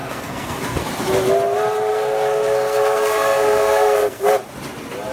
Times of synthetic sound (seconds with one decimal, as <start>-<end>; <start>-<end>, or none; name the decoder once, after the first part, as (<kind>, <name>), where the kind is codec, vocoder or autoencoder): 0.0-0.8 (codec, SNAC); 1.9-4.3